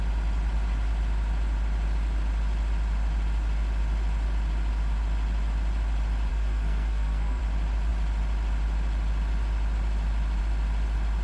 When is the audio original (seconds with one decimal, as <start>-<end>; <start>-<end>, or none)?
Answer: 0.0-6.3; 7.4-11.2